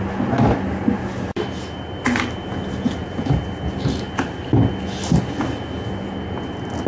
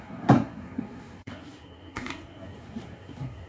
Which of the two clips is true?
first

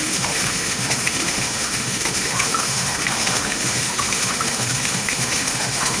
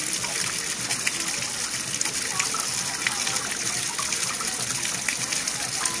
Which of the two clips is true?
second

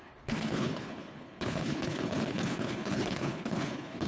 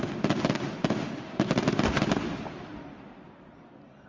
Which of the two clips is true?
second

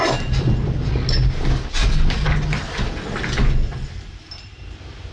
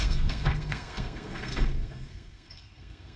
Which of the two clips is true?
first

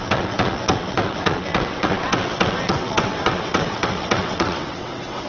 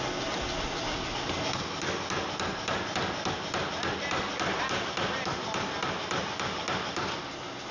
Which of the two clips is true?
second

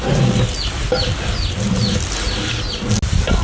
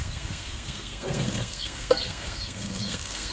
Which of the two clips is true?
first